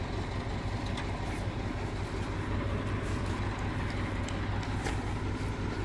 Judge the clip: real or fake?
real